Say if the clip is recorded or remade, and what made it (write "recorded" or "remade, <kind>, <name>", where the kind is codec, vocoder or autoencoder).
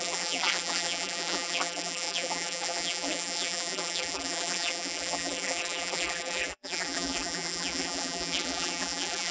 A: remade, vocoder, BigVGAN v2